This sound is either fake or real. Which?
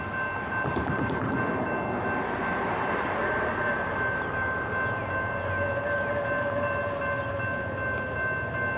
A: real